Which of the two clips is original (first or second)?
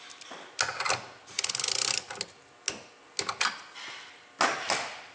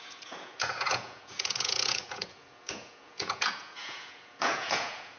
first